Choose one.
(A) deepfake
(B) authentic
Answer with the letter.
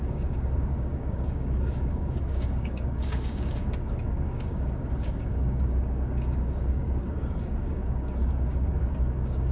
A